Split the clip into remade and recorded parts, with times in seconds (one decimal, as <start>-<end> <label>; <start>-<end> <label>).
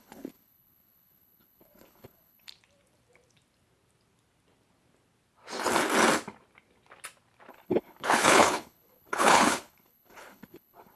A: 0.0-2.5 remade; 2.5-7.5 recorded; 7.5-11.0 remade